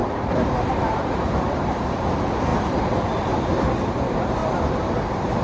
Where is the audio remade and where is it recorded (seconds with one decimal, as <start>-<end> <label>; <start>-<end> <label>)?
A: 0.0-2.0 remade; 2.0-2.5 recorded; 2.5-3.3 remade; 3.3-5.4 recorded